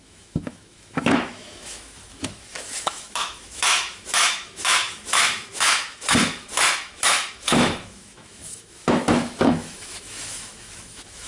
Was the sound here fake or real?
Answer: fake